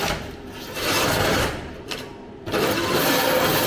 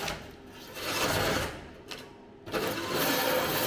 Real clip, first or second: second